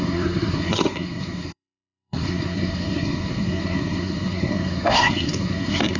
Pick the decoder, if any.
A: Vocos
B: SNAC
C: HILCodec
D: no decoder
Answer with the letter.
B